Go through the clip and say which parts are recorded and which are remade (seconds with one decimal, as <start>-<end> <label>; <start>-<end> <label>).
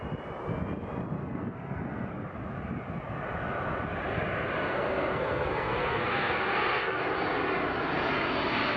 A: 0.0-1.2 recorded; 1.2-2.1 remade; 2.1-4.7 recorded; 4.7-7.0 remade; 7.0-8.8 recorded